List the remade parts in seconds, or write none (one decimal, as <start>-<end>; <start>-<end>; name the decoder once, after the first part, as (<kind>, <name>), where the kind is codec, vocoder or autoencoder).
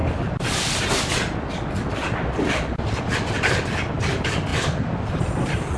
4.5-5.2 (vocoder, BigVGAN v2)